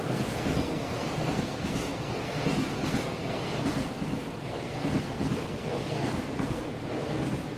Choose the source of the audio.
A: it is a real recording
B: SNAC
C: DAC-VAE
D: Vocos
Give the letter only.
B